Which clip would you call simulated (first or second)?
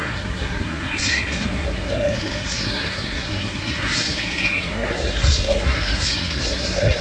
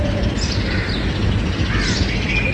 first